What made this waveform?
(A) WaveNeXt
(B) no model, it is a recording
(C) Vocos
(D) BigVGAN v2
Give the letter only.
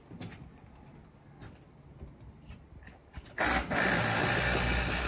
B